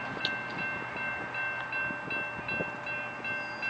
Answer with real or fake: real